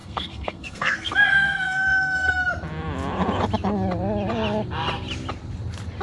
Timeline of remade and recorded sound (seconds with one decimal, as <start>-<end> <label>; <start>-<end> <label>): 0.0-2.5 remade; 2.5-6.0 recorded